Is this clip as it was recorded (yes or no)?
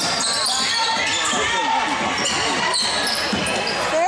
yes